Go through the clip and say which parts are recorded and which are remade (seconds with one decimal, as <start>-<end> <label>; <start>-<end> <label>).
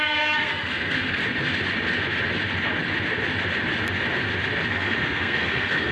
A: 0.0-1.2 remade; 1.2-4.7 recorded; 4.7-5.9 remade